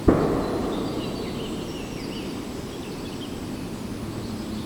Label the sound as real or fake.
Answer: real